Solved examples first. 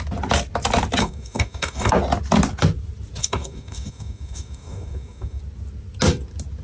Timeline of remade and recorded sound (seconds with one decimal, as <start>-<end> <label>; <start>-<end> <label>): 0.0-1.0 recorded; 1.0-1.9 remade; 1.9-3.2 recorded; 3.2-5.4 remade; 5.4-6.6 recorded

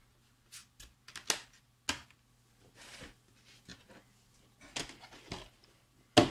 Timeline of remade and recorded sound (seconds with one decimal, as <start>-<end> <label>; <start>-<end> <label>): 0.0-6.3 recorded

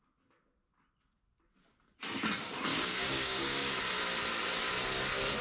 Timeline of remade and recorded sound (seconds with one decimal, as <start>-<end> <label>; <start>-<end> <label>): 0.0-2.7 recorded; 2.7-3.8 remade; 3.8-5.4 recorded

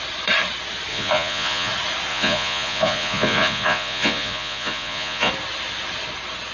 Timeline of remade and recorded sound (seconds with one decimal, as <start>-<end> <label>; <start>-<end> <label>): 0.0-0.9 recorded; 0.9-1.7 remade; 1.7-2.1 recorded; 2.1-5.3 remade; 5.3-6.5 recorded

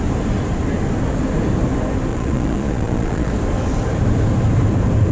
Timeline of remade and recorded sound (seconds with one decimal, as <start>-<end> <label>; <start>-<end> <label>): 0.0-2.1 recorded; 2.1-3.3 remade; 3.3-5.1 recorded